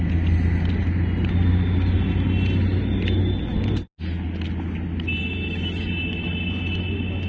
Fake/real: real